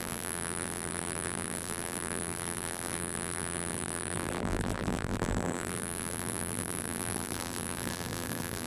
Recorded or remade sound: remade